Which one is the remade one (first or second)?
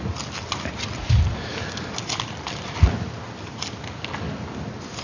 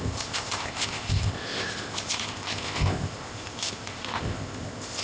second